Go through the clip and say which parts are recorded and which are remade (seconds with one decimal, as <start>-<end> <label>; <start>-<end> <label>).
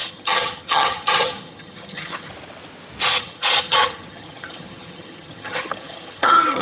0.0-2.3 remade; 2.3-3.2 recorded; 3.2-6.6 remade